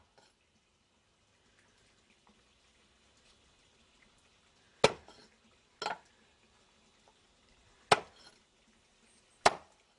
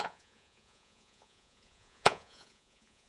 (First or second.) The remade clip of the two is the second